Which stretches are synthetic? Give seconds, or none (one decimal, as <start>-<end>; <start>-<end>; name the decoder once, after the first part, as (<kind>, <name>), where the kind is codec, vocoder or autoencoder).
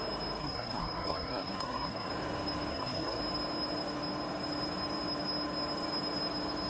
0.4-2.1 (codec, SNAC); 2.7-3.2